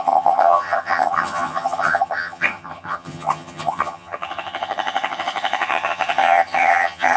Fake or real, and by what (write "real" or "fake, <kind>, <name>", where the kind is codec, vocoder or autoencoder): fake, vocoder, HiFi-GAN